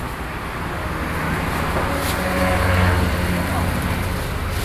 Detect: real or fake real